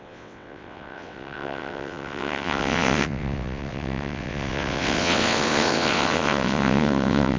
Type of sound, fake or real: fake